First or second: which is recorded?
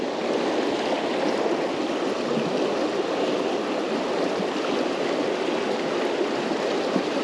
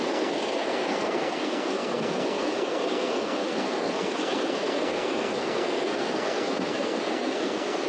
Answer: first